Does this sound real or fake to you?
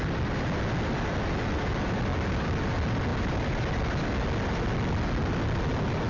real